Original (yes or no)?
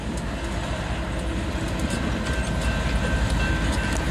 yes